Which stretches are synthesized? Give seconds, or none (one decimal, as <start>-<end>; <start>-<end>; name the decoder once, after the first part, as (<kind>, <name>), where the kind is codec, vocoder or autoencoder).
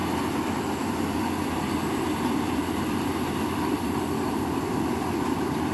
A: 0.0-5.7 (vocoder, BigVGAN v2)